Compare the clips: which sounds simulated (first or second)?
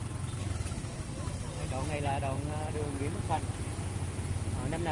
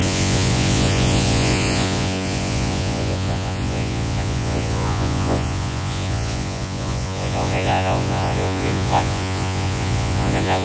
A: second